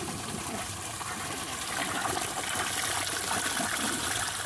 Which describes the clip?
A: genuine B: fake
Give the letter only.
B